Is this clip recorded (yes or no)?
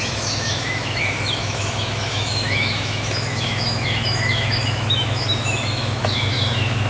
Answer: no